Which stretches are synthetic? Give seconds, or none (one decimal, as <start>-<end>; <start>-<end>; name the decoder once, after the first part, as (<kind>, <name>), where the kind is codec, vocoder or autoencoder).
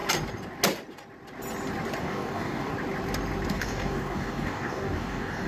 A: 2.0-2.7 (codec, DAC); 3.5-5.5